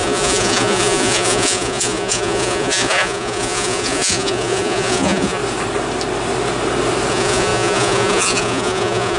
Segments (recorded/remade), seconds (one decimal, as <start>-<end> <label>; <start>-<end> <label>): 0.0-5.4 remade; 5.4-7.1 recorded; 7.1-9.2 remade